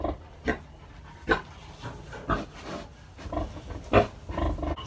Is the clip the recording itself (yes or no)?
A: yes